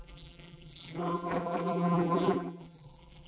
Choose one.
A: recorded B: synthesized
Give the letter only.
B